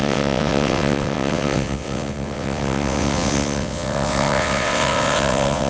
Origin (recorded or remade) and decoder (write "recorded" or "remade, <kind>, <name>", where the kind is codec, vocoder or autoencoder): remade, vocoder, WaveNeXt